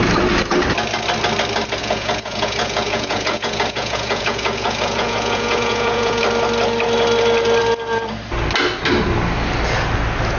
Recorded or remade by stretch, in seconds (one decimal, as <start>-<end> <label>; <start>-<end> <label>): 0.0-1.8 recorded; 1.8-6.2 remade; 6.2-10.4 recorded